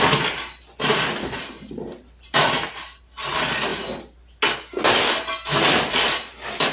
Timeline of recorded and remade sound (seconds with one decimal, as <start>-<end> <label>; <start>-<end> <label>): 0.0-6.7 recorded